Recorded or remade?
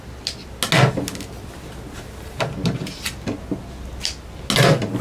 recorded